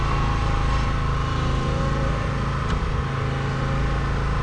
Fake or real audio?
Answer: real